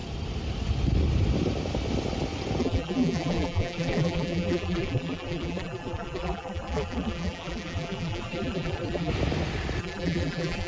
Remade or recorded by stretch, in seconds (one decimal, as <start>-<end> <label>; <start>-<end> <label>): 0.0-2.6 recorded; 2.6-9.1 remade; 9.1-9.8 recorded; 9.8-10.7 remade